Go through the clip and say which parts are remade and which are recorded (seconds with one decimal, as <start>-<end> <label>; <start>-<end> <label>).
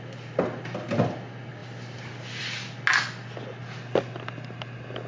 0.0-5.1 recorded